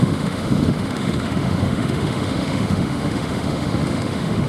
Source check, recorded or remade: remade